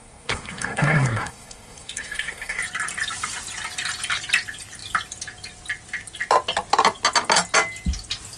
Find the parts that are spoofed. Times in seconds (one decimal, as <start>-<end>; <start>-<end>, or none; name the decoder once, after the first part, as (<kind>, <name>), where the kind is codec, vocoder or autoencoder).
0.0-2.6 (codec, SNAC)